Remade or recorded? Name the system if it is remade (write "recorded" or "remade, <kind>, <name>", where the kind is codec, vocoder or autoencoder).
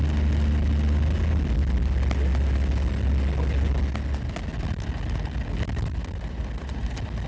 recorded